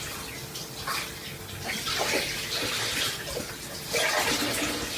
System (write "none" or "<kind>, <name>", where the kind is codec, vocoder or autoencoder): none